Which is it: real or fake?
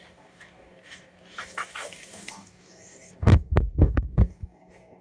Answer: fake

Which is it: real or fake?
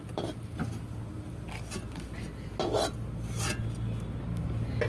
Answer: real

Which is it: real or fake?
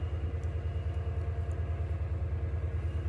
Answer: real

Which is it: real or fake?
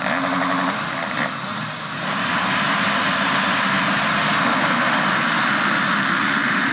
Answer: real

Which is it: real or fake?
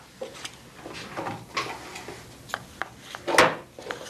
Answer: real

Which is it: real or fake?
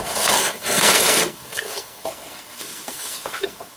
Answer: fake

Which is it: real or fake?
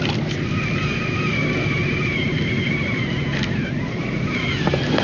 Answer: real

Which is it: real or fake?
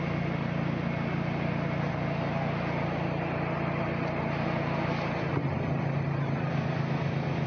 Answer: real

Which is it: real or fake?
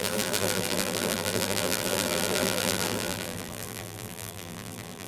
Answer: fake